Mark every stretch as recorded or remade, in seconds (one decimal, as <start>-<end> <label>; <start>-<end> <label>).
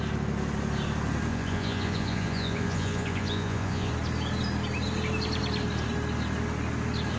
0.0-1.3 recorded; 1.3-3.9 remade; 3.9-7.2 recorded